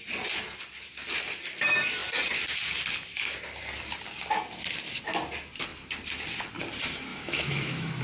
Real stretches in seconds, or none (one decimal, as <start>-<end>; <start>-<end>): 0.0-7.1